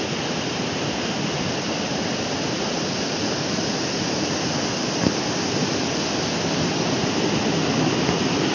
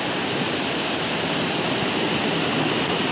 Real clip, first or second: first